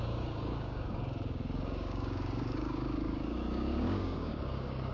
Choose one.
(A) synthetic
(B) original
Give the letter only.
A